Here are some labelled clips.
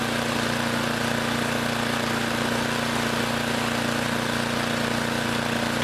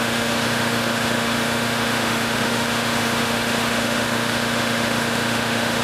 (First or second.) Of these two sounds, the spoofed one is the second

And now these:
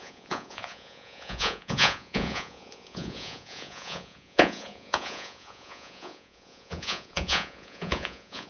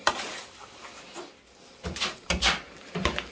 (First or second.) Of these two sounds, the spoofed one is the first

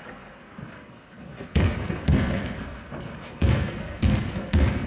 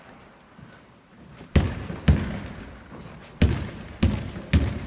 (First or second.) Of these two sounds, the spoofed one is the first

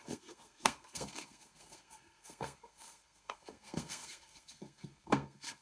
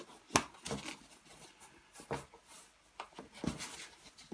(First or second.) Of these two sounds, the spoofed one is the first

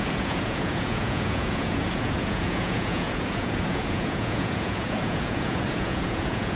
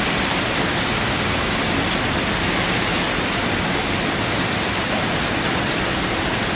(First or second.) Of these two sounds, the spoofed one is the first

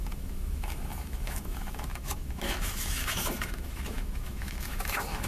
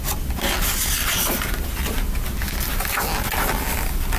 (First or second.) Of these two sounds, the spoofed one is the first